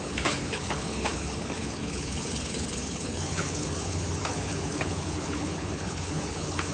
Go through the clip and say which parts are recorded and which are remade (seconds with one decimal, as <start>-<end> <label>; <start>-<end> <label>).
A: 0.0-6.7 remade